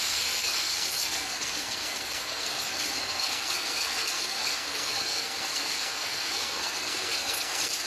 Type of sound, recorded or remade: remade